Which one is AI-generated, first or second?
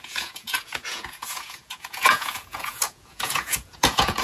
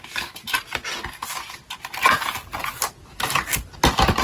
first